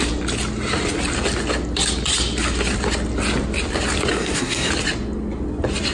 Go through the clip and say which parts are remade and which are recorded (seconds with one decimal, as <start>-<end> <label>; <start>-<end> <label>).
0.0-4.1 recorded; 4.1-4.7 remade; 4.7-5.9 recorded